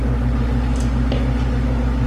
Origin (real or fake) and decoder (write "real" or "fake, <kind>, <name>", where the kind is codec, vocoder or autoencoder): real